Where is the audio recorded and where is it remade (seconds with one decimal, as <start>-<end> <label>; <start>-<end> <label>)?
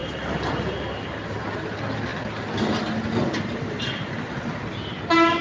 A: 0.0-5.4 recorded